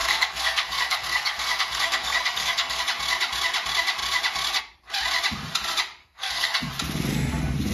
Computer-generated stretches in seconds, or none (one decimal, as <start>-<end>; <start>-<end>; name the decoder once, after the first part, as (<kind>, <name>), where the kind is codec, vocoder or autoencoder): 0.0-2.8 (codec, SNAC); 6.0-6.7